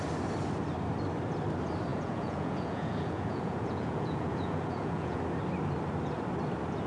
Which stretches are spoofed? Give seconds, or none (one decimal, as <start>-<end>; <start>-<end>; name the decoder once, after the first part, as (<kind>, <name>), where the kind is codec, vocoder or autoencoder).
1.9-5.2 (vocoder, Vocos)